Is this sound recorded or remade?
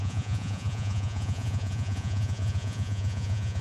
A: remade